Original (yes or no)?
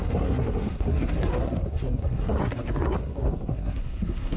no